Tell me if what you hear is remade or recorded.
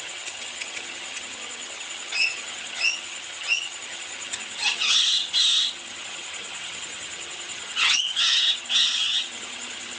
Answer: remade